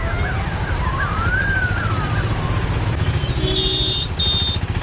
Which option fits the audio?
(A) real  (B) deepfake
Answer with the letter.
A